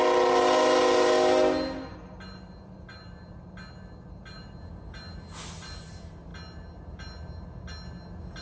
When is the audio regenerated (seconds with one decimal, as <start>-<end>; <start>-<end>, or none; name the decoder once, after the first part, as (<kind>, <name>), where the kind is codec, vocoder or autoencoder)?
none